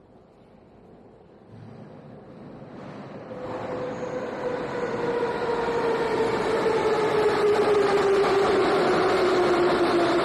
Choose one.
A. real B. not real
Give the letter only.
A